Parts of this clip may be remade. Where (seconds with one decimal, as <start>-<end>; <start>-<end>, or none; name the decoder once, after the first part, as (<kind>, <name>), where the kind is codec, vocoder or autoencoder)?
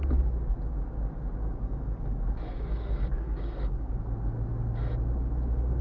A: 1.4-4.0 (codec, DAC)